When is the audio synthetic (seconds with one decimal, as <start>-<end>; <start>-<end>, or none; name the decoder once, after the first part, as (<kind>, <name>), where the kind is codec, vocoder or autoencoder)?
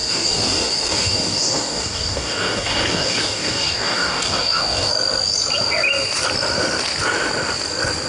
0.0-4.9 (codec, DAC)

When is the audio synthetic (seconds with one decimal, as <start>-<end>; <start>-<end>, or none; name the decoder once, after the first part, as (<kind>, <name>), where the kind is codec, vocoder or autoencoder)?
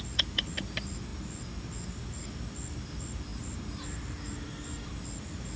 none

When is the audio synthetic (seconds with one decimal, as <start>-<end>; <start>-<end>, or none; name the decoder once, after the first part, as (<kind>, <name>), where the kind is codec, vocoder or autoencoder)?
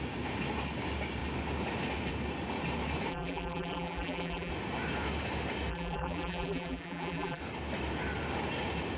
3.1-4.5 (vocoder, BigVGAN v2); 5.7-7.4